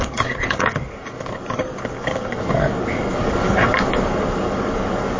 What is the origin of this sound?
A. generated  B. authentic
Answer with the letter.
A